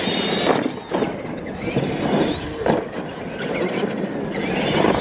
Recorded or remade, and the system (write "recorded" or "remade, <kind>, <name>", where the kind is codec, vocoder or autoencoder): recorded